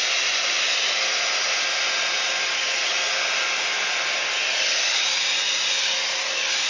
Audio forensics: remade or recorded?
recorded